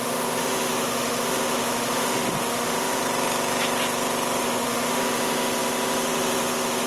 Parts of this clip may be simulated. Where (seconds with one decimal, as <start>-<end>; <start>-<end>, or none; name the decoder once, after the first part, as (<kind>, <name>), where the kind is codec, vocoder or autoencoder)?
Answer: 0.0-3.0 (autoencoder, DAC-VAE); 4.4-6.9